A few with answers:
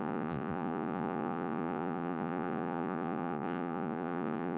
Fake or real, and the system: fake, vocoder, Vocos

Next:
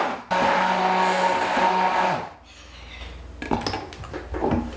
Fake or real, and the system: real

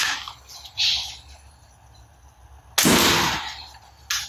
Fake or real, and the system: real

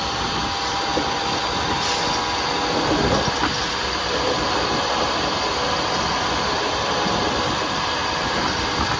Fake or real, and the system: real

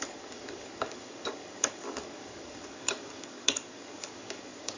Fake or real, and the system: fake, codec, DAC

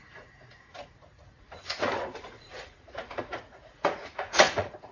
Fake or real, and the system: fake, vocoder, Vocos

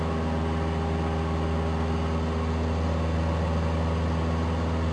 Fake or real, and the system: real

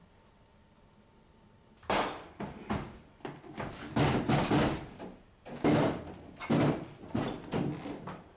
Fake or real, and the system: real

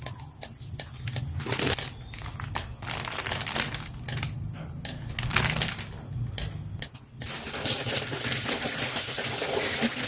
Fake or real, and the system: real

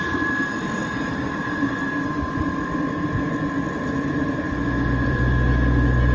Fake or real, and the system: fake, vocoder, BigVGAN v2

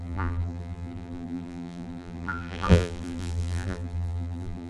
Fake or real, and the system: fake, vocoder, BigVGAN v2